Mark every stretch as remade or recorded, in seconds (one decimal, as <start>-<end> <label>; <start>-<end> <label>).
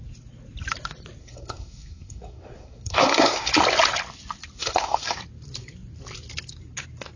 0.0-1.2 recorded; 1.2-3.5 remade; 3.5-4.6 recorded; 4.6-5.2 remade; 5.2-7.2 recorded